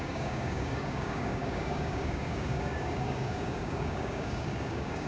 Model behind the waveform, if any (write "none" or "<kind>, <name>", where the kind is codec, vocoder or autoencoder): codec, DAC